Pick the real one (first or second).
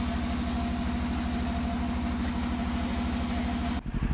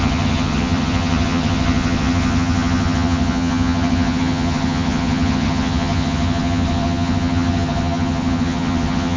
first